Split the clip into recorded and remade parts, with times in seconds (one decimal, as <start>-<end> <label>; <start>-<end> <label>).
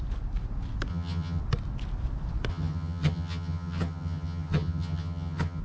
0.0-0.9 recorded; 0.9-1.4 remade; 1.4-2.5 recorded; 2.5-5.6 remade